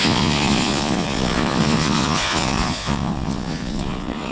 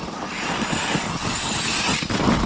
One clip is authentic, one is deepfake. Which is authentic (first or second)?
second